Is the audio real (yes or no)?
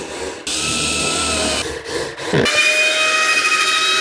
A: yes